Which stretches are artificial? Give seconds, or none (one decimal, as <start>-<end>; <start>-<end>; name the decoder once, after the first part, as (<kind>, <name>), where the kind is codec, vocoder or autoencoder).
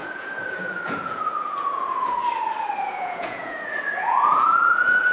0.0-2.2 (vocoder, Vocos); 2.8-5.1